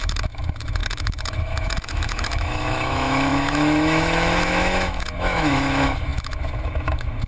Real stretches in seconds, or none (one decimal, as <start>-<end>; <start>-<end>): none